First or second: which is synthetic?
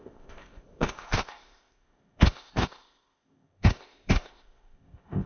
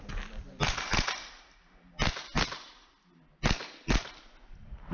first